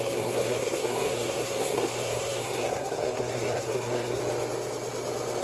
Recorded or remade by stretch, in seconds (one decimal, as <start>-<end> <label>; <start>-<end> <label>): 0.0-4.2 remade; 4.2-5.4 recorded